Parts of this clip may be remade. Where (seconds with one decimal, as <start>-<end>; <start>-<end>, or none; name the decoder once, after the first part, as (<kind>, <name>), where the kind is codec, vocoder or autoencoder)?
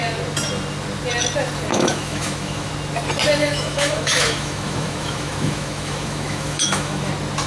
1.7-2.7 (autoencoder, DAC-VAE); 3.4-7.1